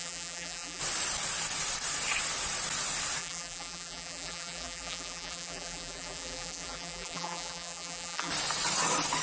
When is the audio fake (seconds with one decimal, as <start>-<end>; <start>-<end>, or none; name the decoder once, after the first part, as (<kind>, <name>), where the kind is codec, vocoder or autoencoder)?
0.0-0.8 (vocoder, BigVGAN v2); 3.2-8.3